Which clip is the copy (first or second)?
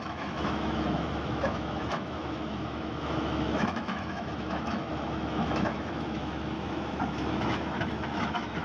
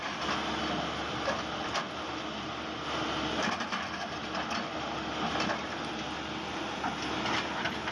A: first